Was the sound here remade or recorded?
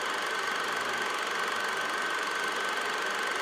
recorded